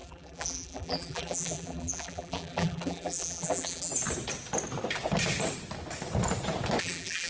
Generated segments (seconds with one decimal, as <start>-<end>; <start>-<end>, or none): 0.0-3.9; 6.8-7.3